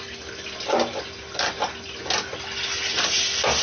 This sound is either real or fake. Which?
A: real